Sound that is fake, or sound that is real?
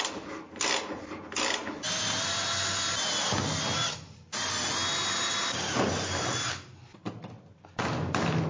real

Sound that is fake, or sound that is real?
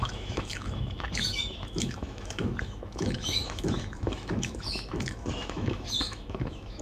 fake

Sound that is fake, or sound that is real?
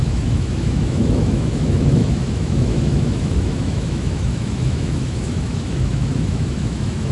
fake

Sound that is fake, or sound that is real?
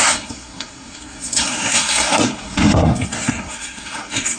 fake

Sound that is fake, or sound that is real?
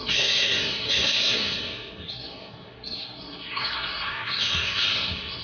fake